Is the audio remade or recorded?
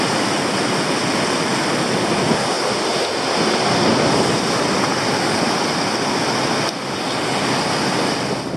recorded